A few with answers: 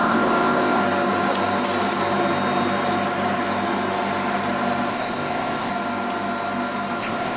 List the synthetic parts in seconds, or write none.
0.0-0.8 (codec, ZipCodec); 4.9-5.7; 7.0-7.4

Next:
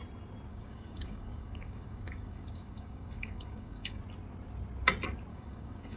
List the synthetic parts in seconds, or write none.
0.5-4.0 (codec, DAC); 5.3-6.0

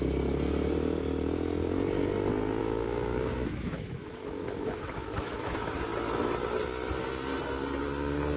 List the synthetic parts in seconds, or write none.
2.6-5.8 (autoencoder, DAC-VAE)

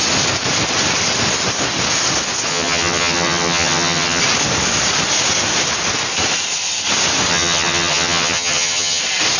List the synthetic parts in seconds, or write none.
2.5-4.2 (vocoder, HiFi-GAN); 7.3-9.0